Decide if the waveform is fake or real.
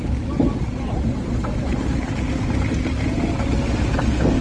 real